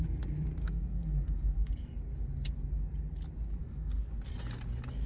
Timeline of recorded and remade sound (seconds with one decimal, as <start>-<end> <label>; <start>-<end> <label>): 0.0-0.6 recorded; 0.6-1.7 remade; 1.7-3.6 recorded; 3.6-4.1 remade; 4.1-5.1 recorded